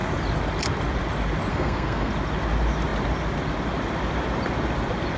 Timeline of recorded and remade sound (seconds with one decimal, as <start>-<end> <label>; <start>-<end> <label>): 0.0-1.5 recorded; 1.5-2.1 remade; 2.1-5.2 recorded

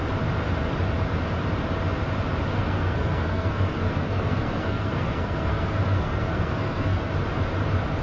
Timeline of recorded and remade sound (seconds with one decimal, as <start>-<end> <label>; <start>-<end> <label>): 0.0-2.5 recorded; 2.5-7.1 remade; 7.1-8.0 recorded

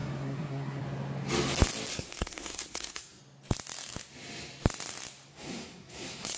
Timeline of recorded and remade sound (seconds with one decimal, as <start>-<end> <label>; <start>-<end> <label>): 0.0-0.8 remade; 0.8-1.9 recorded; 1.9-3.2 remade; 3.2-5.3 recorded; 5.3-6.4 remade

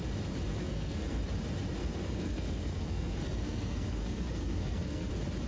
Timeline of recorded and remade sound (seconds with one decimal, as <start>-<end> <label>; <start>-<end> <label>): 0.0-0.5 recorded; 0.5-1.2 remade; 1.2-1.8 recorded; 1.8-5.1 remade; 5.1-5.5 recorded